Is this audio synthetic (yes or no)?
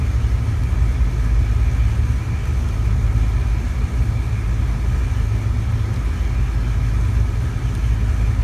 no